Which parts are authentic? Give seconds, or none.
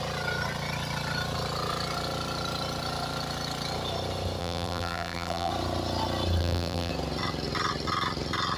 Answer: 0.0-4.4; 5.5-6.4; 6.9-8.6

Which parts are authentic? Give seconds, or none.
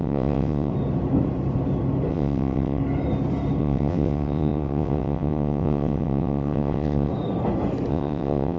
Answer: 0.7-2.1; 2.8-3.6; 7.1-7.9